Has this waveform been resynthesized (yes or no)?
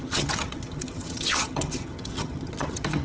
yes